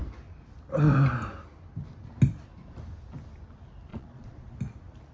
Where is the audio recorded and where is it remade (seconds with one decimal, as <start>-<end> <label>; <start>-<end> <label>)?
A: 0.0-3.9 recorded; 3.9-4.5 remade; 4.5-5.1 recorded